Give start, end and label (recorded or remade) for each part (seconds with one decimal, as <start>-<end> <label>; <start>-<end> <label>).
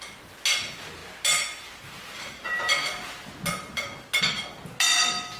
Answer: 0.0-5.4 recorded